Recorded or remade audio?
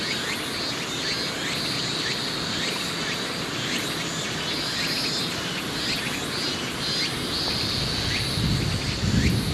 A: recorded